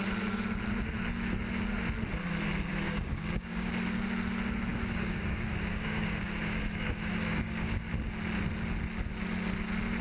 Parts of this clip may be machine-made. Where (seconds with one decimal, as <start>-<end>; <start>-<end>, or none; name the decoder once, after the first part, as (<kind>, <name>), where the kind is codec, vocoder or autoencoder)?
2.7-3.7 (codec, DAC); 4.7-7.9